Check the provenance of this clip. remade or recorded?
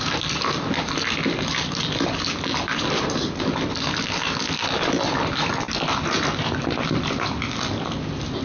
recorded